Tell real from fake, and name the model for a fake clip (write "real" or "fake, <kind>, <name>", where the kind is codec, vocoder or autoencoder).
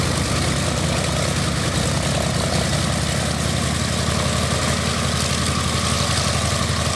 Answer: real